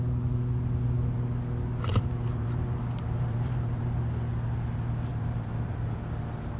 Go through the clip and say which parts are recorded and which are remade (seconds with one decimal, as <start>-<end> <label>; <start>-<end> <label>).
0.0-1.9 recorded; 1.9-4.0 remade; 4.0-5.1 recorded; 5.1-5.7 remade; 5.7-6.6 recorded